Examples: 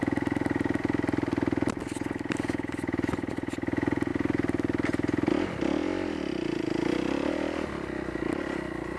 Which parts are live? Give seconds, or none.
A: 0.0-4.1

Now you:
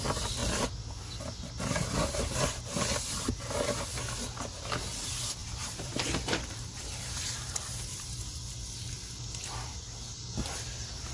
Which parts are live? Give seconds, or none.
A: 0.0-5.4; 8.4-11.1